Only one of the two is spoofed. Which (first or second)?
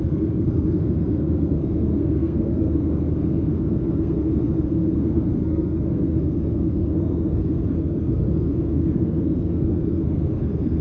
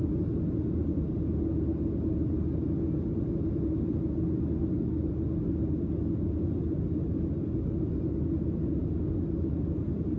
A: first